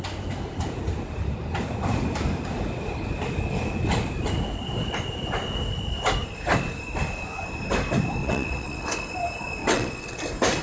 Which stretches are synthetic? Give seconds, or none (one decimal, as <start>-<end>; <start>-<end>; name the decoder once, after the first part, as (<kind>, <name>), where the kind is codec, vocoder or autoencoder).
8.2-8.9 (vocoder, WaveNeXt); 9.6-10.2